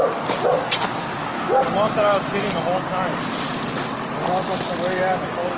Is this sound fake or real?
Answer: real